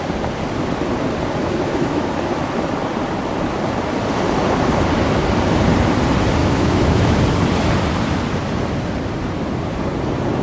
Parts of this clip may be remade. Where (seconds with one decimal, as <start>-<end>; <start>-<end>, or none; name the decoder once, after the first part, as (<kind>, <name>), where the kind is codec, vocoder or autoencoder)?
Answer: 1.4-2.1 (autoencoder, DAC-VAE); 6.4-7.2